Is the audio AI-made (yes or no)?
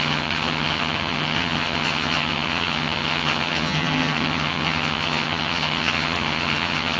yes